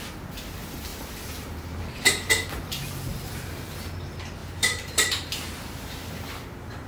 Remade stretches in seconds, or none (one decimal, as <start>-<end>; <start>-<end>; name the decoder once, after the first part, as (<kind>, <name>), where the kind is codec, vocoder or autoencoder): 3.1-3.6 (vocoder, BigVGAN v2); 4.4-5.9